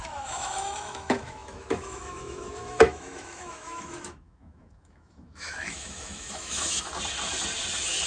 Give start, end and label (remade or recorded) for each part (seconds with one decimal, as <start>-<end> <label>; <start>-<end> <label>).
0.0-6.9 remade; 6.9-8.1 recorded